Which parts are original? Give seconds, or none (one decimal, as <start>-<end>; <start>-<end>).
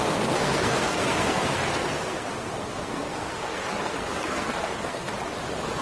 5.1-5.8